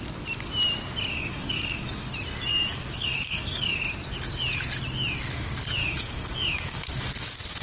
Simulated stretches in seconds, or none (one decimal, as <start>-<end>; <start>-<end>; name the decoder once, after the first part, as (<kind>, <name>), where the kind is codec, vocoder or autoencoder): 1.1-2.1 (codec, DAC); 2.5-3.8; 5.8-6.9